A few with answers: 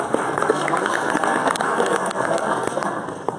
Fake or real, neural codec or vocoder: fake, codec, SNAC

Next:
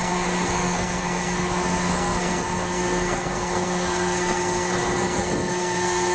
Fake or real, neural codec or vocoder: fake, codec, SNAC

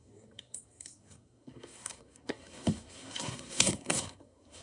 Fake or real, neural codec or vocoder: fake, codec, SNAC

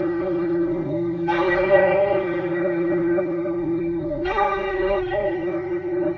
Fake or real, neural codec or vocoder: fake, codec, SNAC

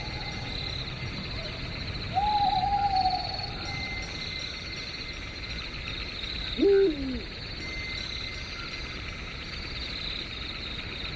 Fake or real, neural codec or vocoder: real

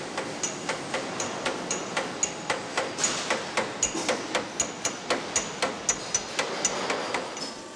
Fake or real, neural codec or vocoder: real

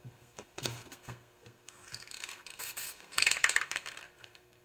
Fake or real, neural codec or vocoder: fake, codec, SNAC